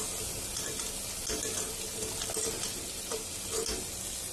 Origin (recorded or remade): recorded